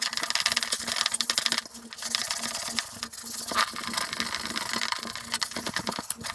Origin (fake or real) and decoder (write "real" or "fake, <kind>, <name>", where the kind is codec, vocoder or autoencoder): real